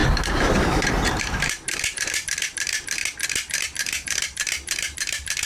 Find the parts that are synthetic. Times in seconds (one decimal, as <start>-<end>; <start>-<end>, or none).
1.2-3.0; 3.6-5.4